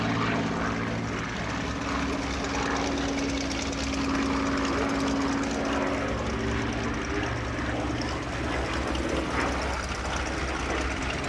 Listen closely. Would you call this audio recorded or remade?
recorded